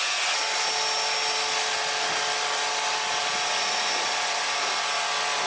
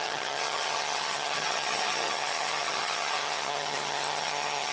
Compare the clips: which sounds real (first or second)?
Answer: first